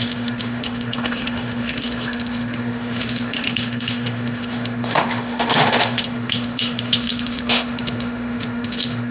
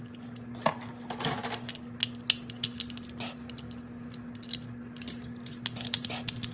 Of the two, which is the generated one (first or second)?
first